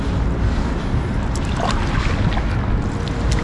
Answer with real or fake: real